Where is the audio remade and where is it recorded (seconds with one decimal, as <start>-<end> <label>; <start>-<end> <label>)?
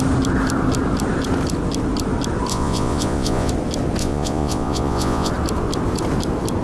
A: 0.0-2.5 recorded; 2.5-3.5 remade; 3.5-4.0 recorded; 4.0-5.3 remade; 5.3-6.6 recorded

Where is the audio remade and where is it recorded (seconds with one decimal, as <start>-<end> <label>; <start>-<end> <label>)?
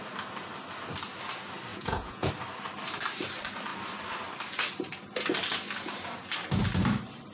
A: 0.0-1.7 recorded; 1.7-2.3 remade; 2.3-7.3 recorded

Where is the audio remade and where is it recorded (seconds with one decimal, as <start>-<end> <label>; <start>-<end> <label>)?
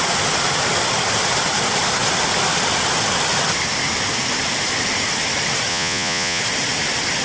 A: 0.0-5.7 recorded; 5.7-6.4 remade; 6.4-7.2 recorded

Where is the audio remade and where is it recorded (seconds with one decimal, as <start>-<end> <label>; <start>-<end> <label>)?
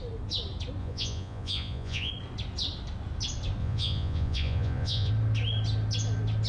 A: 0.0-0.8 recorded; 0.8-2.1 remade; 2.1-3.6 recorded; 3.6-5.1 remade; 5.1-6.5 recorded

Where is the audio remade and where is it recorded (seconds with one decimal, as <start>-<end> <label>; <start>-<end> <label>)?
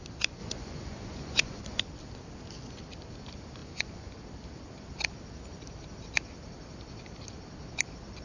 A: 0.0-0.4 recorded; 0.4-1.8 remade; 1.8-3.6 recorded; 3.6-4.1 remade; 4.1-8.2 recorded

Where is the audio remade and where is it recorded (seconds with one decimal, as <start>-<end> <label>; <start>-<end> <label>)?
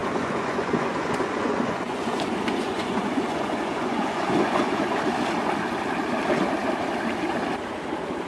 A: 0.0-5.0 remade; 5.0-8.3 recorded